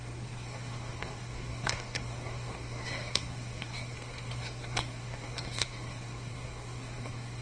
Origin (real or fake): fake